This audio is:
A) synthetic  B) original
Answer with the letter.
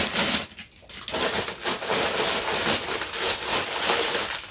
B